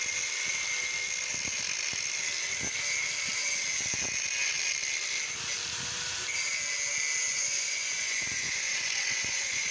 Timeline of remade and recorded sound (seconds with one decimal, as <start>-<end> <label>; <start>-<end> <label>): 0.0-7.3 recorded; 7.3-9.7 remade